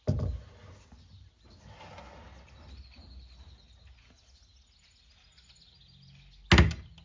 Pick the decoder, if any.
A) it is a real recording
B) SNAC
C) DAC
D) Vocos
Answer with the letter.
A